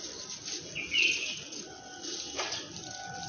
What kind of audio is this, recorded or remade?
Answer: recorded